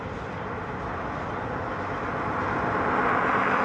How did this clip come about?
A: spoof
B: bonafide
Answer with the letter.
B